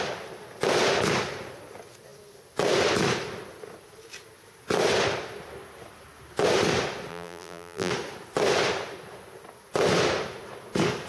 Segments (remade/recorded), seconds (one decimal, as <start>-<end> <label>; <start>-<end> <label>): 0.0-7.1 recorded; 7.1-7.9 remade; 7.9-11.1 recorded